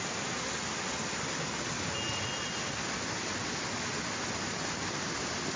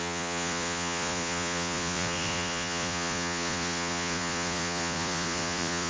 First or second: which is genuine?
first